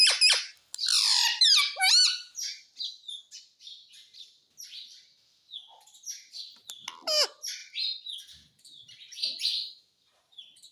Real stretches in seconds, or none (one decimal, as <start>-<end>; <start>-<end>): 0.0-1.0; 2.0-7.6; 9.8-10.7